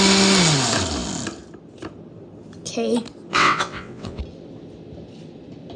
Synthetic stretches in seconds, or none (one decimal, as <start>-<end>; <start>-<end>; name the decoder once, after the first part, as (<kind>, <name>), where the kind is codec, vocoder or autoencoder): 3.3-4.2 (vocoder, WaveNeXt)